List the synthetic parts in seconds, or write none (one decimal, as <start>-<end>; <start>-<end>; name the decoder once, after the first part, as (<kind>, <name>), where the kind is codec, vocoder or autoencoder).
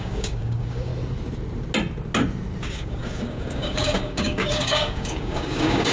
0.0-0.9 (codec, DAC); 2.6-5.9